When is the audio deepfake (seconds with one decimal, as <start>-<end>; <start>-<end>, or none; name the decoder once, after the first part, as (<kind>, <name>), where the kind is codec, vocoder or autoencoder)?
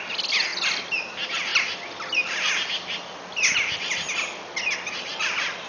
none